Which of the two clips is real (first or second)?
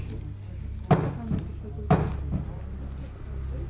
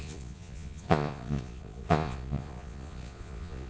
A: first